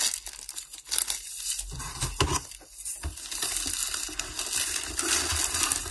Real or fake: real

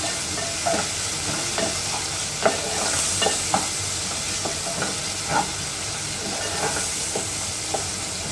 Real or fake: real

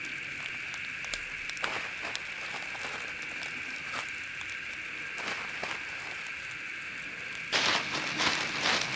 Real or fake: real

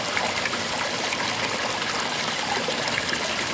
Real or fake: real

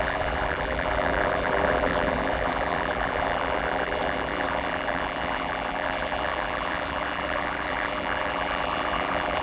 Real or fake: fake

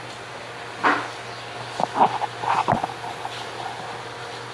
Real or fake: real